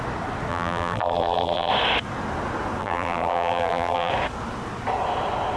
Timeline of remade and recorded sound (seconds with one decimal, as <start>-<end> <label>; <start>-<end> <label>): 0.0-0.5 recorded; 0.5-1.7 remade; 1.7-2.8 recorded; 2.8-4.1 remade; 4.1-5.6 recorded